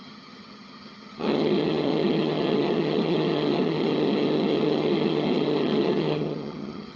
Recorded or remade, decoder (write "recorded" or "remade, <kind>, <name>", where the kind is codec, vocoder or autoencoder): remade, vocoder, HiFi-GAN